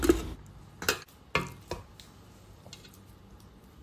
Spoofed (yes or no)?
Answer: no